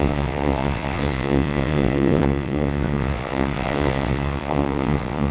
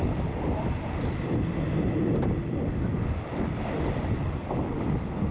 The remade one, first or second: first